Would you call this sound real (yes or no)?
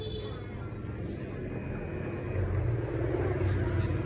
yes